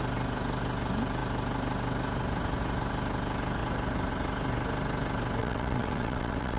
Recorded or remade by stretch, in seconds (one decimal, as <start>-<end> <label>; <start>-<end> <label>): 0.0-5.4 recorded; 5.4-6.6 remade